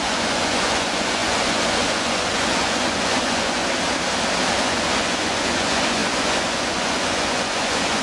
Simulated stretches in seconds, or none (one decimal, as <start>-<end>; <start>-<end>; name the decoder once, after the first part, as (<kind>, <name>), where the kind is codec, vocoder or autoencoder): 0.0-3.6 (vocoder, Vocos); 4.6-8.0